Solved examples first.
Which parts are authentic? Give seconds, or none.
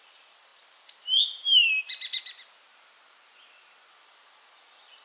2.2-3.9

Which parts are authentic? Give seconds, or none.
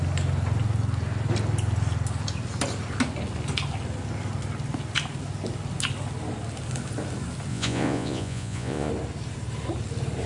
0.0-7.5; 8.9-10.3